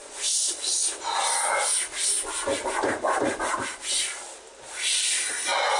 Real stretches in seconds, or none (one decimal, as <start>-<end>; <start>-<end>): 0.5-5.8